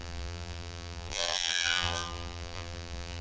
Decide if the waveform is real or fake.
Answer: fake